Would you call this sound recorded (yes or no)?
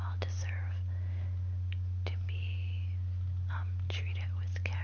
yes